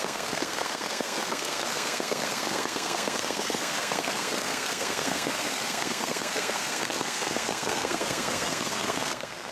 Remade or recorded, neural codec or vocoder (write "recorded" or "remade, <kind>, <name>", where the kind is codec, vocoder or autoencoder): remade, codec, SNAC